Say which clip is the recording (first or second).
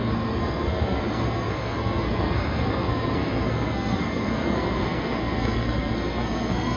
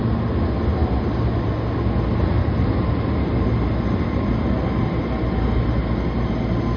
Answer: second